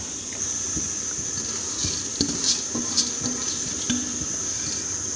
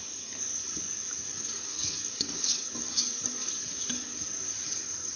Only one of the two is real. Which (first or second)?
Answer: first